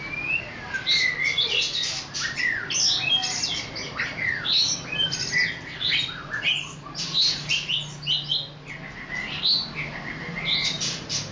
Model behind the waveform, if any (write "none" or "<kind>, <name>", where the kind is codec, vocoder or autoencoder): none